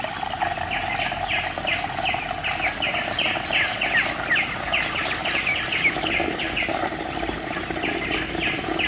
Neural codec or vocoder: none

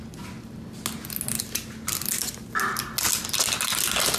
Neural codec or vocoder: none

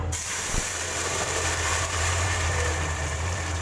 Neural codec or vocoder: vocoder, BigVGAN v2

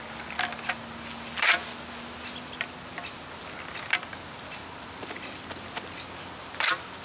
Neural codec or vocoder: none